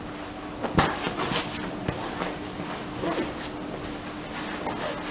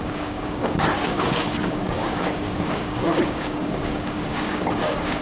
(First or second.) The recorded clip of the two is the first